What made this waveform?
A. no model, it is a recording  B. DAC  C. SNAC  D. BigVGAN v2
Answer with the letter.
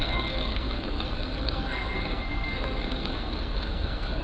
C